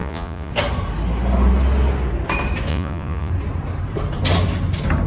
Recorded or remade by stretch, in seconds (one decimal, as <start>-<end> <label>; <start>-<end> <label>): 0.0-0.5 remade; 0.5-2.7 recorded; 2.7-3.3 remade; 3.3-5.1 recorded